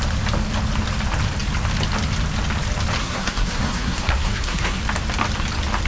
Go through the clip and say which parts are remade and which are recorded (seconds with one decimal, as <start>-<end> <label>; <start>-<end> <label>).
0.0-3.0 recorded; 3.0-4.8 remade; 4.8-5.9 recorded